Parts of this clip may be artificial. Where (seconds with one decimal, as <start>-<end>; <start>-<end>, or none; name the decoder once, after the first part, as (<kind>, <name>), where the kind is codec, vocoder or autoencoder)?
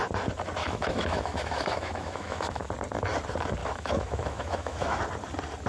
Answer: 0.6-2.7 (autoencoder, DAC-VAE); 3.6-5.0